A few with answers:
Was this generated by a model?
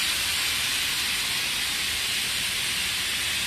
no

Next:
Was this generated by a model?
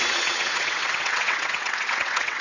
yes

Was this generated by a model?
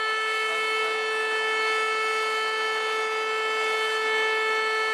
no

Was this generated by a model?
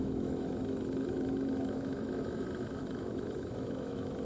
yes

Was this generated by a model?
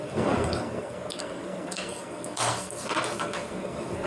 yes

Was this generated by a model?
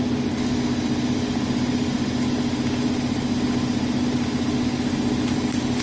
no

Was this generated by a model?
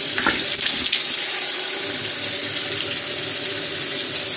no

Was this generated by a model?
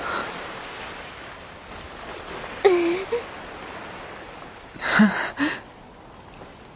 no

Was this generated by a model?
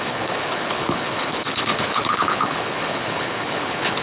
yes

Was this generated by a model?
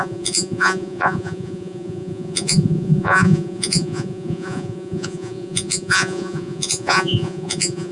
yes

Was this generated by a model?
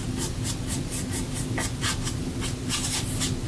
no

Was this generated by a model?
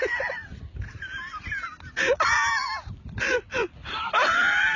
no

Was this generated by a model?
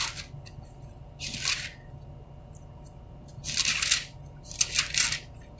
no